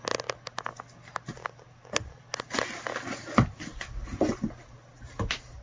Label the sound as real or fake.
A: real